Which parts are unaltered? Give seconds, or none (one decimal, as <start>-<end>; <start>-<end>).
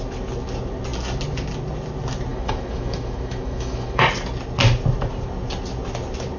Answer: 0.0-2.3; 4.0-6.4